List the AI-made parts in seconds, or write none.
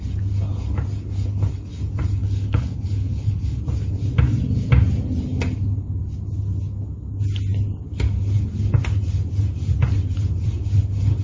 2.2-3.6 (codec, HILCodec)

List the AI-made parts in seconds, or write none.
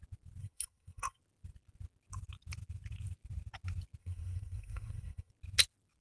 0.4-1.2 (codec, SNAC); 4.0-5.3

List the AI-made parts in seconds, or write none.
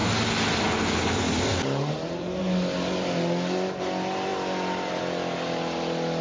none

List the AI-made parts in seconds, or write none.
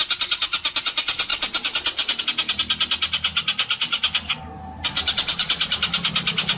none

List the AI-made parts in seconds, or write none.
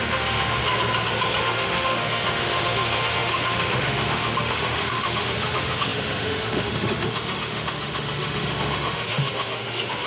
0.0-0.6 (autoencoder, DAC-VAE); 1.4-10.1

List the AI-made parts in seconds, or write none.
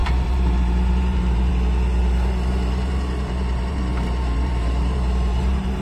0.0-1.5 (vocoder, BigVGAN v2); 2.0-5.8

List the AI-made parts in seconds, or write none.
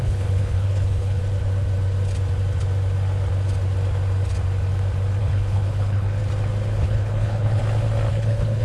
0.0-1.2 (codec, HILCodec); 5.2-6.2; 6.8-7.6; 8.1-8.6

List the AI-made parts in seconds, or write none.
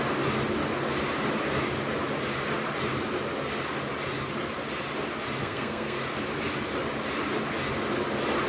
5.4-6.0 (codec, SNAC)